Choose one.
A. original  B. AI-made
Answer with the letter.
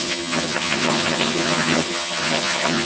B